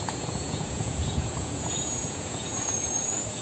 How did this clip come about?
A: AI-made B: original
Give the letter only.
A